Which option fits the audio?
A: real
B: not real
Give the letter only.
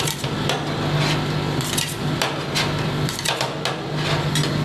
A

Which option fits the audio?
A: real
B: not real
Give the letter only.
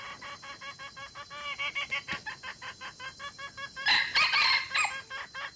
A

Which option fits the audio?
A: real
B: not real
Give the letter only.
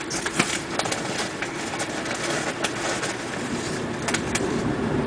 B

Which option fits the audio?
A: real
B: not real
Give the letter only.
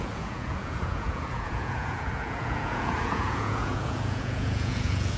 B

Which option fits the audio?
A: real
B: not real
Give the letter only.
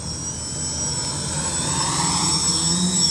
A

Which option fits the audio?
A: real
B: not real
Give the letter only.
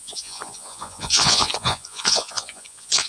B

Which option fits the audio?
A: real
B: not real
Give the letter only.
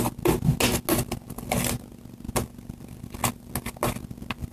A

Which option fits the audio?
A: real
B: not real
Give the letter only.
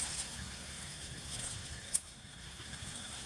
B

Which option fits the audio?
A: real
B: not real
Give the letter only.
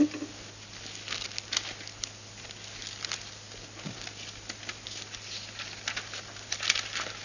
A